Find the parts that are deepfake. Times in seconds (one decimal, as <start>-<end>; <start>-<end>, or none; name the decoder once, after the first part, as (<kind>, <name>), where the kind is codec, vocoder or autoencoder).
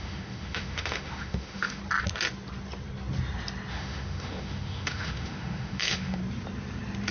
0.0-1.8 (autoencoder, DAC-VAE); 3.7-6.2